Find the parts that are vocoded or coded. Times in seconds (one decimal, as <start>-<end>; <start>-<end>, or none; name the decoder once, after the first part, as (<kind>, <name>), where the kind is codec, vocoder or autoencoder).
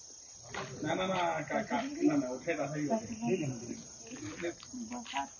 none